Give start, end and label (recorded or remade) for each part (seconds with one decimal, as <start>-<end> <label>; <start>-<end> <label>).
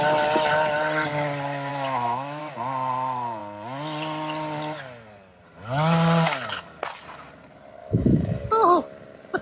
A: 0.0-1.7 recorded; 1.7-2.4 remade; 2.4-7.8 recorded; 7.8-8.5 remade; 8.5-9.4 recorded